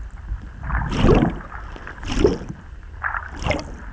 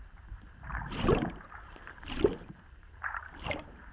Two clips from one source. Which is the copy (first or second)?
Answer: second